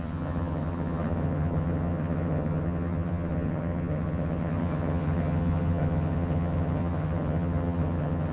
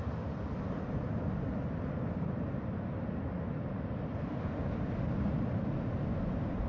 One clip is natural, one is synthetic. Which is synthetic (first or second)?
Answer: first